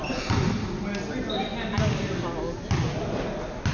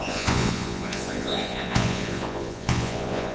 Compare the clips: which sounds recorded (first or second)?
first